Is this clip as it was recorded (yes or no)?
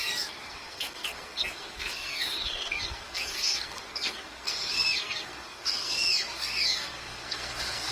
no